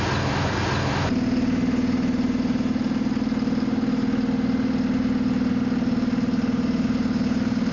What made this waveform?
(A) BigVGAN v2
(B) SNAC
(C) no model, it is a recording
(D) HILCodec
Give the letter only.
C